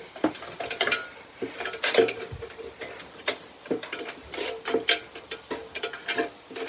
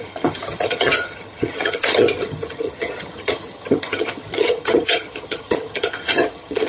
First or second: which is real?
first